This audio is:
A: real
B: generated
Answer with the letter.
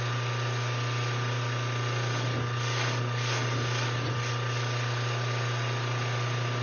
A